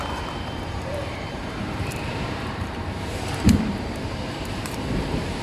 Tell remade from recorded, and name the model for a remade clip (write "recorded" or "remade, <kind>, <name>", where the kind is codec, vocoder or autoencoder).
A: remade, vocoder, BigVGAN v2